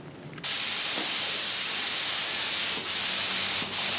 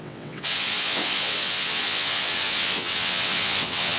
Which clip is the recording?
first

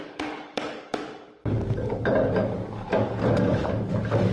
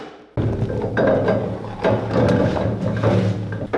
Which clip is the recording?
second